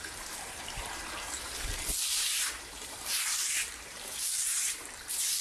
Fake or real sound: fake